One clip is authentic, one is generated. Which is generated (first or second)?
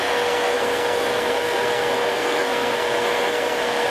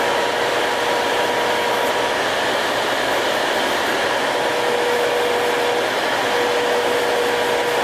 first